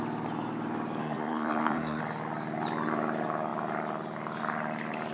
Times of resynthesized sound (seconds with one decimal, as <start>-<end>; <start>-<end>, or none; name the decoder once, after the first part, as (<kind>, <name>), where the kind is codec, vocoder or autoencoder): 1.0-2.0 (codec, SNAC)